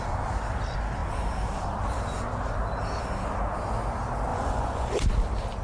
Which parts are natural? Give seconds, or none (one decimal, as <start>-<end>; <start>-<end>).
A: 0.0-4.3; 5.0-5.6